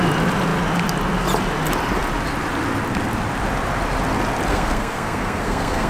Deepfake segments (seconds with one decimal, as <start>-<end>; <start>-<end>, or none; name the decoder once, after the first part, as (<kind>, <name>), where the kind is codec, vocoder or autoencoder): 4.5-5.9 (codec, SNAC)